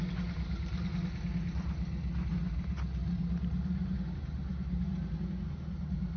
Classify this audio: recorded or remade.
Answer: recorded